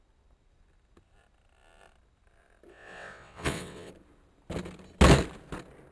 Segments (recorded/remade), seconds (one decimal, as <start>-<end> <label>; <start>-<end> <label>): 0.0-2.7 recorded; 2.7-3.9 remade; 3.9-5.9 recorded